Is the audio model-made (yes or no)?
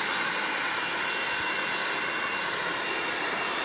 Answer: no